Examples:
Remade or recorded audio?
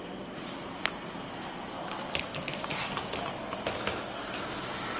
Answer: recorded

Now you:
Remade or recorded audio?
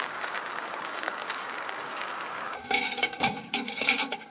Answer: remade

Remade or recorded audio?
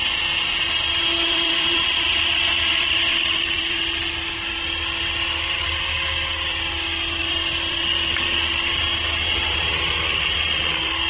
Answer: remade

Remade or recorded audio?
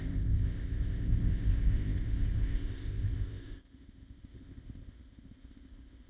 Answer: remade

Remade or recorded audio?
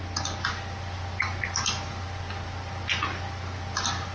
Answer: recorded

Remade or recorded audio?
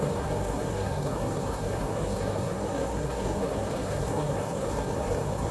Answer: remade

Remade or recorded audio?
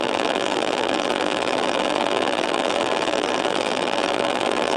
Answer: remade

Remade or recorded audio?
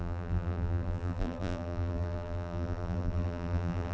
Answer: remade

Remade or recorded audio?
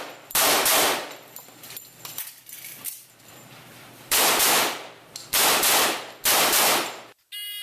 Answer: remade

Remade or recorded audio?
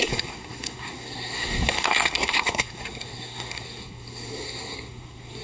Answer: remade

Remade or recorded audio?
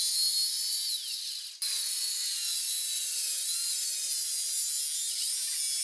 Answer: recorded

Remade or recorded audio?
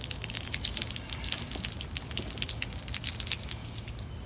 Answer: recorded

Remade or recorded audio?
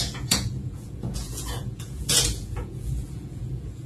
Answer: remade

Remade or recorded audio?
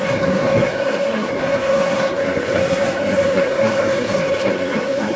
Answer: remade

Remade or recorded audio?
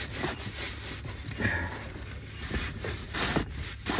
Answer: recorded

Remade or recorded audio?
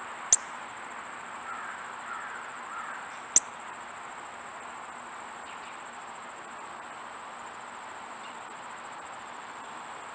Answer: recorded